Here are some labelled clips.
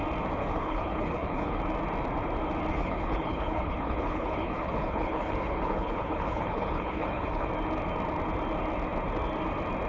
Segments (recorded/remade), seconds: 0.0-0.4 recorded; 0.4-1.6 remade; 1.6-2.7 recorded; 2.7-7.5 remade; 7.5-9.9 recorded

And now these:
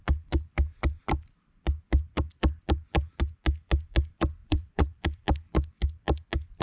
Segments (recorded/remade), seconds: 0.0-4.4 recorded; 4.4-5.2 remade; 5.2-6.6 recorded

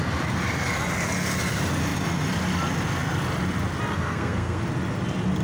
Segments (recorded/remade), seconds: 0.0-3.9 recorded; 3.9-4.6 remade; 4.6-5.4 recorded

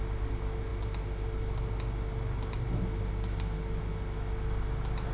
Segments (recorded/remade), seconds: 0.0-5.1 recorded

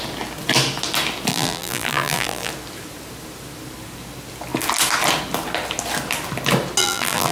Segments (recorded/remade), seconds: 0.0-1.3 recorded; 1.3-2.5 remade; 2.5-6.8 recorded; 6.8-7.3 remade

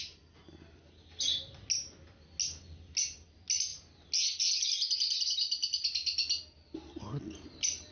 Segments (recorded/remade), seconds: 0.0-7.9 recorded